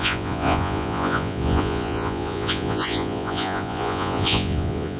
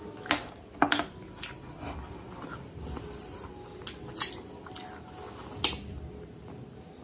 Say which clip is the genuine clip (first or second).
second